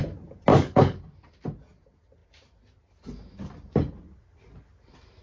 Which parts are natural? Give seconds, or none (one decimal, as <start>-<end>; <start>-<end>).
0.0-0.5; 1.0-5.2